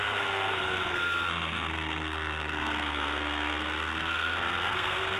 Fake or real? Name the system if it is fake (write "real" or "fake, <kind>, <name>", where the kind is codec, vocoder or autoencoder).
fake, codec, SNAC